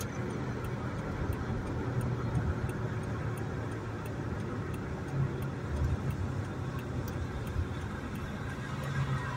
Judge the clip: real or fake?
real